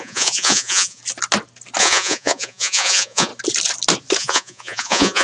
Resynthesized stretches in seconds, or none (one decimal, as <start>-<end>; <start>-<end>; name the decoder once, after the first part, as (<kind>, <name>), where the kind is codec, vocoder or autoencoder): 0.0-1.0 (vocoder, Vocos); 1.8-3.3; 4.2-5.2